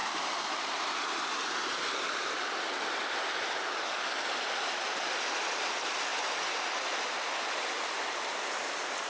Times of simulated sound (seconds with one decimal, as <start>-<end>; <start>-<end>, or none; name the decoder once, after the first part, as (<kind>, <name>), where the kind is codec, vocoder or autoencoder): none